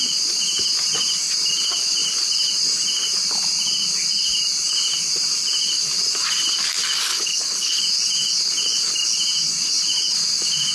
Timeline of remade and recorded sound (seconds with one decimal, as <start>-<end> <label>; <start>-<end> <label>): 0.0-7.1 recorded; 7.1-7.8 remade; 7.8-10.7 recorded